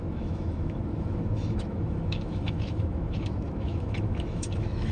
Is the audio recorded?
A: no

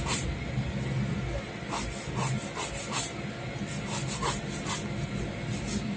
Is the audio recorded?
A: yes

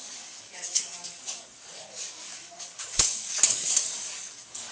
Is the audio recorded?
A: no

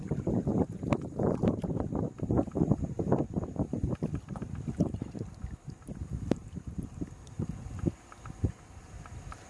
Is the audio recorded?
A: no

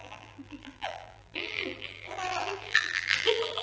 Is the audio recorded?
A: no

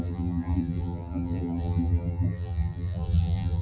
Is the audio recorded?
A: no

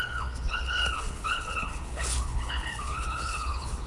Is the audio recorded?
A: no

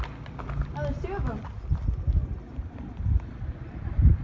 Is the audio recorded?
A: yes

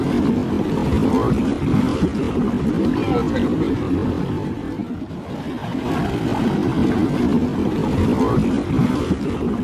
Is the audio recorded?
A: yes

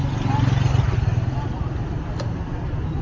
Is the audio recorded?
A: yes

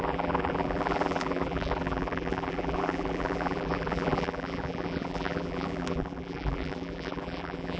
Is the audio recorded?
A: no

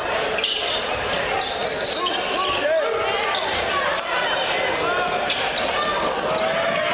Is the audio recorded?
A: yes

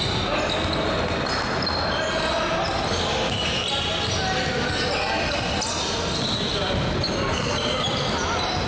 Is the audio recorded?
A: yes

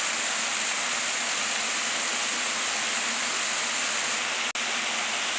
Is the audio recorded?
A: yes